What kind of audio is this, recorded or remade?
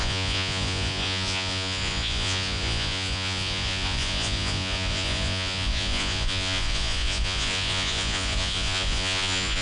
remade